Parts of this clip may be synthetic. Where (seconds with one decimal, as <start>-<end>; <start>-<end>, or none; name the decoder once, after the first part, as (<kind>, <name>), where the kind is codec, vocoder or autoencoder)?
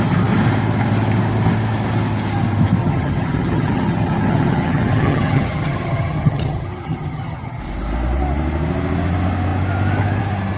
2.8-7.6 (vocoder, HiFi-GAN)